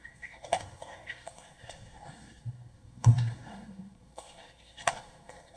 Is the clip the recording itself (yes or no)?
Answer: no